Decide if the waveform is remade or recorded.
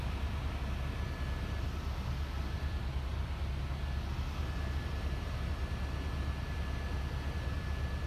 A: recorded